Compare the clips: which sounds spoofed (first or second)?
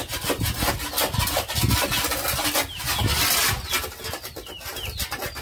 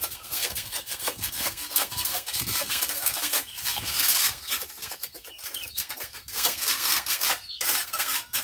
second